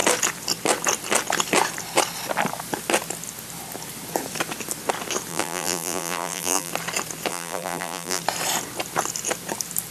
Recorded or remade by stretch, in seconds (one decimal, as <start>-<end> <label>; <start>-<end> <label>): 0.0-5.3 recorded; 5.3-6.7 remade; 6.7-7.3 recorded; 7.3-8.2 remade; 8.2-9.9 recorded